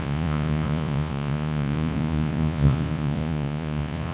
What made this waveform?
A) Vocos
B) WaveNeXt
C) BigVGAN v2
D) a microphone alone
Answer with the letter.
A